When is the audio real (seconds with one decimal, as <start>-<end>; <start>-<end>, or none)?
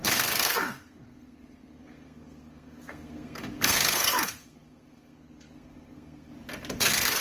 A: 6.3-6.8